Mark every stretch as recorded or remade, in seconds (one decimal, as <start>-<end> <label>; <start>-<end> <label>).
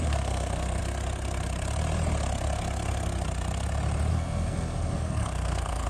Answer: 0.0-0.8 remade; 0.8-4.1 recorded; 4.1-5.9 remade